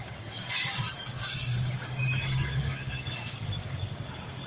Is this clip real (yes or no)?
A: no